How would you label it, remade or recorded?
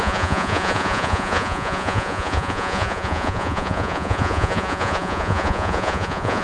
remade